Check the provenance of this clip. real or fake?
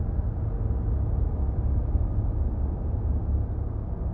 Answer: real